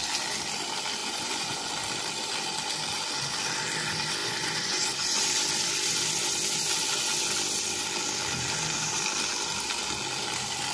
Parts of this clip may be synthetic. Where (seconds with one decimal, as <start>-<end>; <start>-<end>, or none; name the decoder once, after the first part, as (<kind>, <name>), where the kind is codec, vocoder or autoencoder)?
1.0-1.7 (vocoder, Vocos); 4.2-5.2